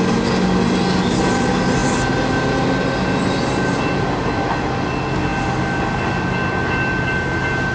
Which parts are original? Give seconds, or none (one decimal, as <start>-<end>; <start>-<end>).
0.0-7.7